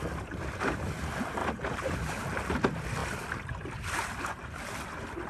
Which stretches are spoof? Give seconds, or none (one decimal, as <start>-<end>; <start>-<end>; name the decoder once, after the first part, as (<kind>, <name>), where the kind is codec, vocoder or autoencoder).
none